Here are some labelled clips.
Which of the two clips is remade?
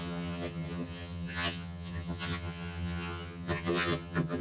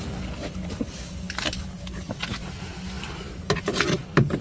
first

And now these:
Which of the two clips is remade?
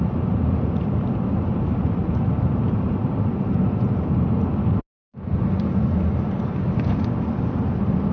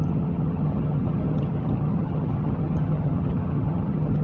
second